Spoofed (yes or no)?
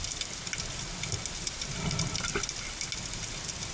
no